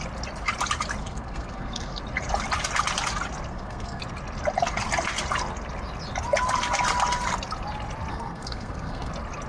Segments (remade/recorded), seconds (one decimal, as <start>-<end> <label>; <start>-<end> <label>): 0.0-1.0 recorded; 1.0-2.0 remade; 2.0-3.5 recorded; 3.5-4.0 remade; 4.0-8.1 recorded; 8.1-9.1 remade; 9.1-9.5 recorded